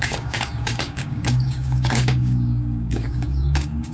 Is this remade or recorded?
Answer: remade